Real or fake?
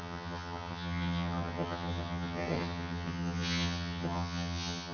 fake